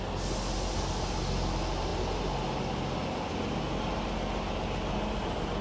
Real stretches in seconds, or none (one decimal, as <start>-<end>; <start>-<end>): 0.0-5.6